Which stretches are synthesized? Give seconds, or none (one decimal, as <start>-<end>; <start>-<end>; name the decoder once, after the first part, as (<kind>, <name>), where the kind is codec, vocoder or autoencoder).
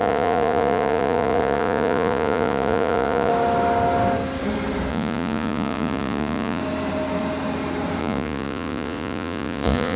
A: 0.0-3.3 (vocoder, Vocos); 4.9-6.6; 8.0-10.0